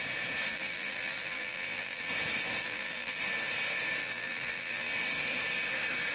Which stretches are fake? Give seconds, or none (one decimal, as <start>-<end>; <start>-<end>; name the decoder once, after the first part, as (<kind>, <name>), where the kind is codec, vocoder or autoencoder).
0.5-2.1 (vocoder, BigVGAN v2); 2.6-3.2; 4.0-4.9